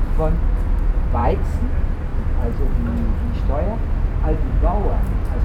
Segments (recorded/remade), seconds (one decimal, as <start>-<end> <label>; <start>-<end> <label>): 0.0-5.4 recorded